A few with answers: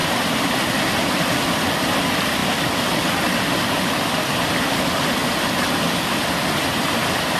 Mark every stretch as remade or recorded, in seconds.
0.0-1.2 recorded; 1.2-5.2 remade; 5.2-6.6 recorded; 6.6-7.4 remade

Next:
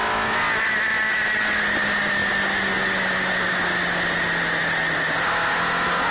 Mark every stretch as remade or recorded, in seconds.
0.0-6.1 recorded